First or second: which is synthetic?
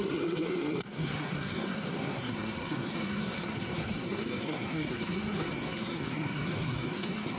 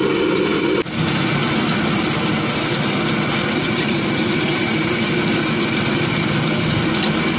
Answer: first